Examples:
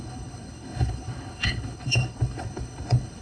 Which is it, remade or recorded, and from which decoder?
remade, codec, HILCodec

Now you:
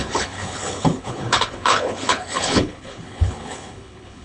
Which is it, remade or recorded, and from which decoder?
remade, codec, HILCodec